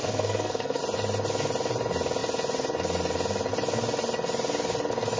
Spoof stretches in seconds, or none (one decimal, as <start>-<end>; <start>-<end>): 0.0-0.8